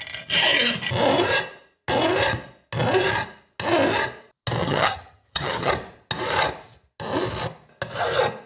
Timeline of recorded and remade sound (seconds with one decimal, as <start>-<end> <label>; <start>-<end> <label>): 0.0-4.6 recorded; 4.6-5.7 remade; 5.7-8.5 recorded